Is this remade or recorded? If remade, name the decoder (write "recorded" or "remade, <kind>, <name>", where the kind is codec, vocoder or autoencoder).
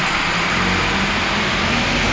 recorded